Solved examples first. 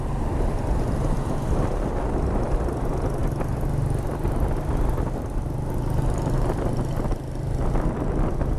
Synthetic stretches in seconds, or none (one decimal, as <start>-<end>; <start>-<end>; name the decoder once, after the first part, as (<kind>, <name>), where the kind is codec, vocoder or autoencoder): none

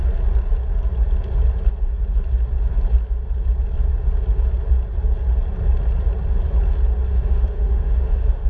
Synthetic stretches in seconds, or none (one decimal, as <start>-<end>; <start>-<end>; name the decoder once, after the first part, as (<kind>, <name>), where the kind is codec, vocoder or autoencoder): 7.1-8.5 (autoencoder, DAC-VAE)

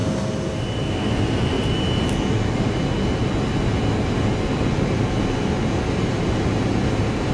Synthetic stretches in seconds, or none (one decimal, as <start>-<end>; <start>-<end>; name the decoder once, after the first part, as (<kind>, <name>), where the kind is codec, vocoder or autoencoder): none

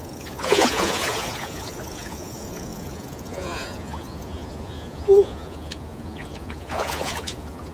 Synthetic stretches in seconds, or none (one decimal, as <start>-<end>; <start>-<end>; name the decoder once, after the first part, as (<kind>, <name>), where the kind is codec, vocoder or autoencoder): 0.0-7.7 (vocoder, Vocos)

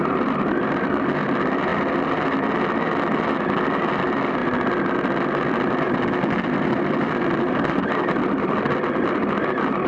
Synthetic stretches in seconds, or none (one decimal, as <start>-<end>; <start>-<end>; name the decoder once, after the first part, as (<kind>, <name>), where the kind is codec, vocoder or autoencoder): none

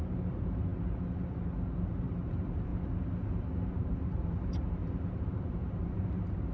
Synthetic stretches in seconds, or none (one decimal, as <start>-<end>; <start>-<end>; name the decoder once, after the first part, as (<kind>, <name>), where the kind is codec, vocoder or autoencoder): 0.0-0.7 (vocoder, BigVGAN v2); 2.1-2.7; 3.8-6.5

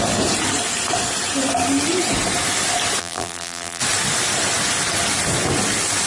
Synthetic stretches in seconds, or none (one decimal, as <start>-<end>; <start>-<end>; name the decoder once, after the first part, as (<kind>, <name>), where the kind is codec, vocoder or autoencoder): 3.0-3.8 (vocoder, BigVGAN v2)